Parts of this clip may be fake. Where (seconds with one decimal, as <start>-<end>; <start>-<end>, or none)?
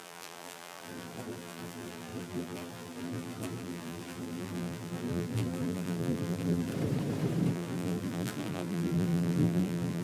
0.0-6.7; 7.5-10.0